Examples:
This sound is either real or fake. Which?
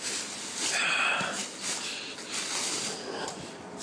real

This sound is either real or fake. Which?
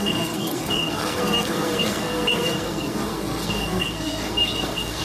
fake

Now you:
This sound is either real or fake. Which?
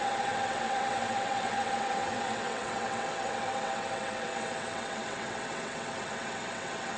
fake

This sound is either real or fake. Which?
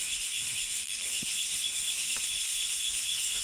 fake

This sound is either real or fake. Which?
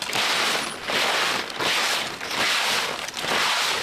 real